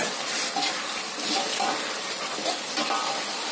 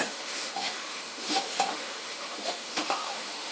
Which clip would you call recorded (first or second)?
first